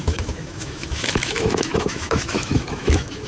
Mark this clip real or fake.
fake